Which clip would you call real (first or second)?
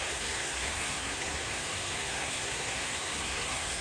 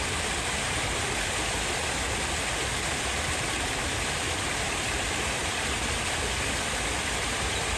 second